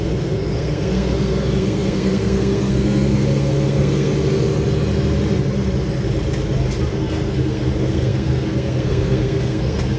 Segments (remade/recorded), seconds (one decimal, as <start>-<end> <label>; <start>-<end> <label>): 0.0-4.1 remade; 4.1-6.9 recorded; 6.9-10.0 remade